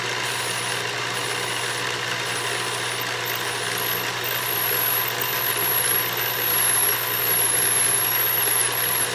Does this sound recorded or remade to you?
recorded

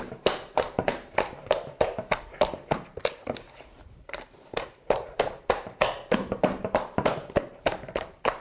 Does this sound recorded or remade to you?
remade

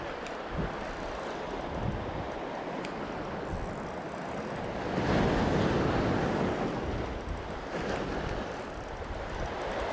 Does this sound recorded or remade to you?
recorded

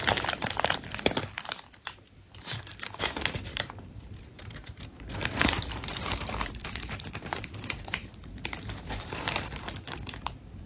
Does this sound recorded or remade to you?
remade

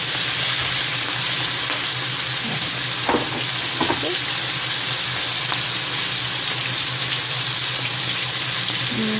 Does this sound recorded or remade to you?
recorded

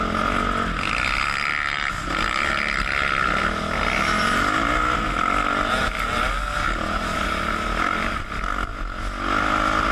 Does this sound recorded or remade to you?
recorded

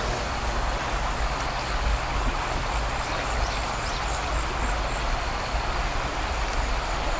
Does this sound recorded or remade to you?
recorded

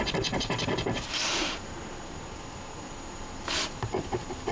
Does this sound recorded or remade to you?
remade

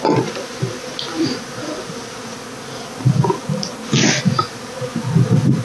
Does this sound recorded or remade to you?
recorded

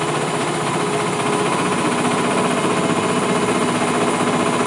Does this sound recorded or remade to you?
recorded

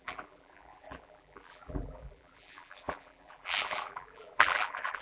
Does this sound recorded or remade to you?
remade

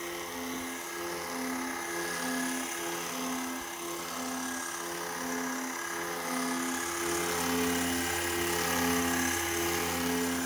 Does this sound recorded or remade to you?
recorded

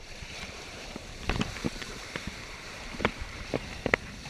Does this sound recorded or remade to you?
remade